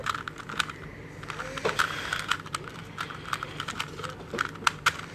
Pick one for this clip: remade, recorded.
recorded